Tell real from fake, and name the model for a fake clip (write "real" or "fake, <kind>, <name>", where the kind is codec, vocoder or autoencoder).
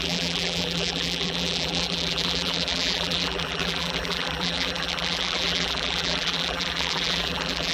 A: fake, vocoder, BigVGAN v2